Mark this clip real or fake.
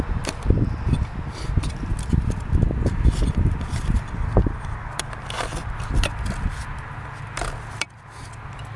real